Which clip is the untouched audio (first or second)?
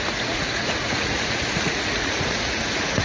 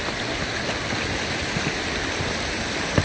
second